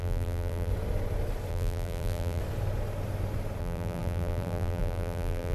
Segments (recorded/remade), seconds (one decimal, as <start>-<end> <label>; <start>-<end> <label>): 0.0-0.7 remade; 0.7-1.5 recorded; 1.5-2.4 remade; 2.4-3.6 recorded; 3.6-5.5 remade